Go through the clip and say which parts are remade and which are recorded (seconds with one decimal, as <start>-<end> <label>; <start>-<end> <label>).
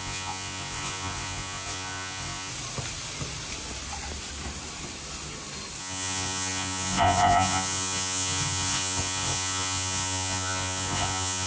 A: 0.0-2.5 remade; 2.5-5.8 recorded; 5.8-11.5 remade